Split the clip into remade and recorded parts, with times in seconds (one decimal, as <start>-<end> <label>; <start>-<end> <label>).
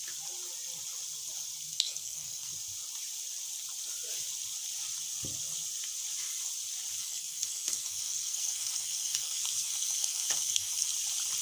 0.0-1.7 recorded; 1.7-2.5 remade; 2.5-7.0 recorded; 7.0-10.9 remade; 10.9-11.4 recorded